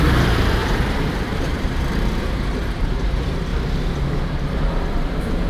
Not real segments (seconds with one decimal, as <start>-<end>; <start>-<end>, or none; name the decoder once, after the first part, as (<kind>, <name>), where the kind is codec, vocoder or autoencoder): 0.0-3.5 (vocoder, BigVGAN v2); 4.2-5.5